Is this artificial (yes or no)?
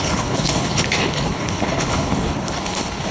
yes